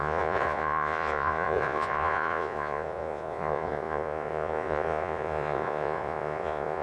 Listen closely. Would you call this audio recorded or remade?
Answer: remade